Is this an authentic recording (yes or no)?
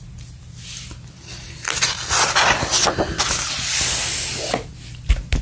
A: yes